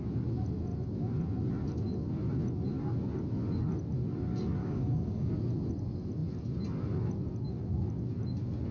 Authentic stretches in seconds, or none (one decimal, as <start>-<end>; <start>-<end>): 0.0-4.6; 5.3-8.7